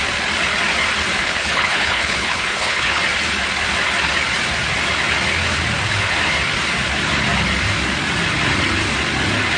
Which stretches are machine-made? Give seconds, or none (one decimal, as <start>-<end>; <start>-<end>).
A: 1.2-3.0